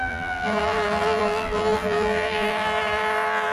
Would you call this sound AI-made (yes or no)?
yes